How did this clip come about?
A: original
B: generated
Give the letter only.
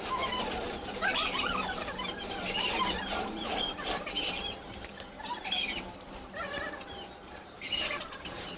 B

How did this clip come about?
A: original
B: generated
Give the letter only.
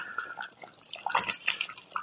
A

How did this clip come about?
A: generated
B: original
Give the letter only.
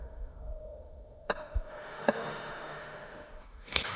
A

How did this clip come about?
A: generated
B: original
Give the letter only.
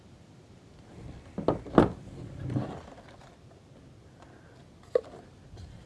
B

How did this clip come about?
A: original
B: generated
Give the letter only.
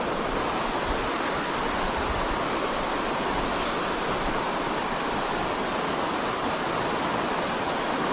A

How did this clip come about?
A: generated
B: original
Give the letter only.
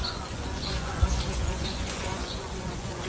A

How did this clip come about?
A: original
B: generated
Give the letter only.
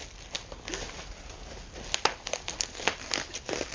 A